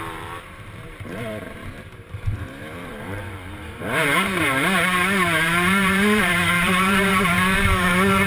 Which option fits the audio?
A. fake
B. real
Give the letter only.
A